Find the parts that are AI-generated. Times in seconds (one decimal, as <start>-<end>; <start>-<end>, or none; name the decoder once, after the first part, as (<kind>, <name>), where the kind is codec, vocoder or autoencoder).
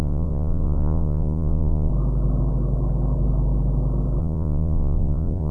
0.0-1.9 (vocoder, Vocos); 4.2-5.5